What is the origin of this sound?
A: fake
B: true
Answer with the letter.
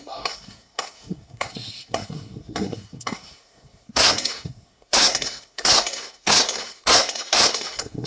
A